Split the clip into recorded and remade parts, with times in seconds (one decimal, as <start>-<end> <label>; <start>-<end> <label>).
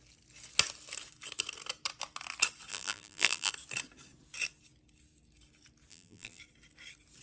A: 0.0-2.7 recorded; 2.7-3.5 remade; 3.5-5.9 recorded; 5.9-6.4 remade; 6.4-7.2 recorded